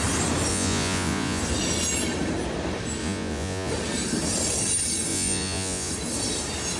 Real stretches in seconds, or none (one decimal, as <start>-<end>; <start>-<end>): 0.0-0.5; 1.4-3.0; 3.7-5.1; 5.9-6.8